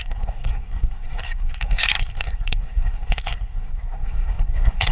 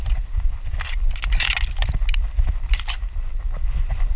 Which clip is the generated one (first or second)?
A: first